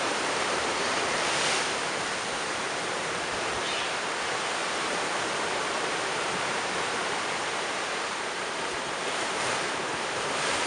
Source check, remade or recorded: remade